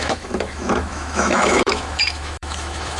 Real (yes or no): no